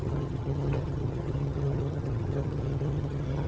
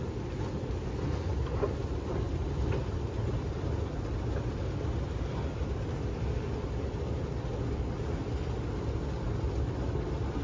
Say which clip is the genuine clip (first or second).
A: second